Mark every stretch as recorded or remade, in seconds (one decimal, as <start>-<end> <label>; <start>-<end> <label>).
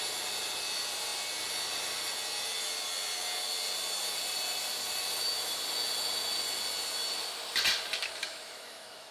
0.0-8.2 recorded; 8.2-9.1 remade